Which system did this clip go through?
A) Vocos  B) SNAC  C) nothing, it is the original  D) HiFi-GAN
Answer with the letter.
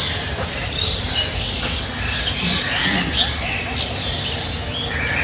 C